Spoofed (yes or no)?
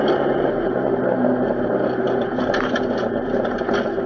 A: no